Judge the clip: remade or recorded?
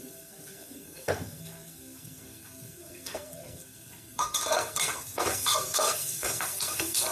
remade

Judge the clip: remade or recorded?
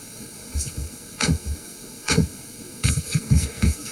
remade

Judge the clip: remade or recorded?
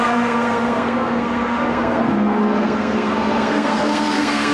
remade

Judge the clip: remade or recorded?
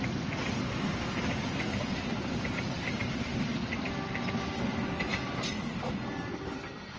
recorded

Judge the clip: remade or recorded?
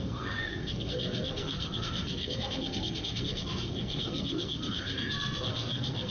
remade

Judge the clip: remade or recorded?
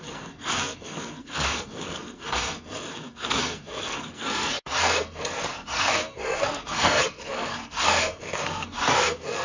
remade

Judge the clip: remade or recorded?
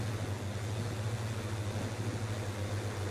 recorded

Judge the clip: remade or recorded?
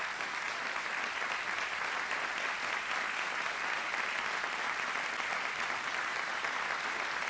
recorded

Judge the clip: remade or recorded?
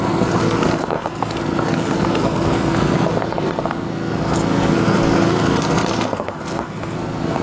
remade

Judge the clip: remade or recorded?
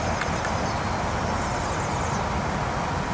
recorded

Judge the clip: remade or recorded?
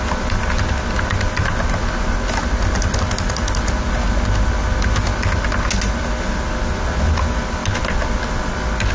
recorded